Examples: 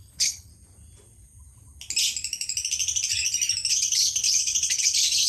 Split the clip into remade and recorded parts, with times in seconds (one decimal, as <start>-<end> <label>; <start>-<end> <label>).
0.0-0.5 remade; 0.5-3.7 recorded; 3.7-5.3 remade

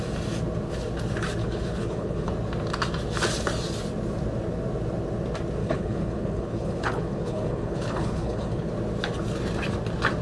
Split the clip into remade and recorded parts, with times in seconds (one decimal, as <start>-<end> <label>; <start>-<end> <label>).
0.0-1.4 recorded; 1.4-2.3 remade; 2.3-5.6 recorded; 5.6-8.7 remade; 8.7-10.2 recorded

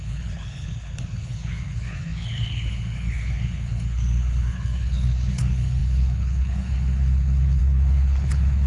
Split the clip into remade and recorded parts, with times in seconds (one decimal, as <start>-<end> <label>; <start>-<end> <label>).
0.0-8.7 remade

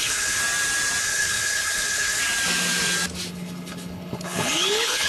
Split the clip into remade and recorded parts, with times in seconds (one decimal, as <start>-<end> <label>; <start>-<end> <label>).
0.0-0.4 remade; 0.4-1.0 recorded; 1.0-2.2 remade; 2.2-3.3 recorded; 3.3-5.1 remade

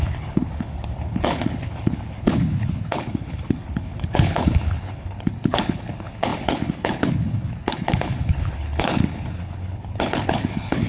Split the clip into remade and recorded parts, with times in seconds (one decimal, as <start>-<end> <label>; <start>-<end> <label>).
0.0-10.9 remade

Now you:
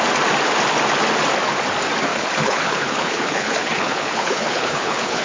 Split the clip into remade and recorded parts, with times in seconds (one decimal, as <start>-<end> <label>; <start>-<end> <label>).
0.0-2.1 recorded; 2.1-5.2 remade

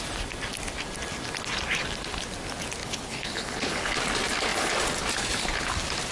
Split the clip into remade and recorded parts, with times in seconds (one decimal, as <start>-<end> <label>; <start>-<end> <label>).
0.0-2.8 recorded; 2.8-3.9 remade; 3.9-6.1 recorded

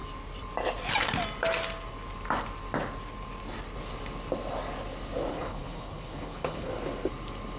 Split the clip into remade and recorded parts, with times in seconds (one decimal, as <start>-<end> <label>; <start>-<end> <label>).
0.0-5.3 recorded; 5.3-6.7 remade; 6.7-7.6 recorded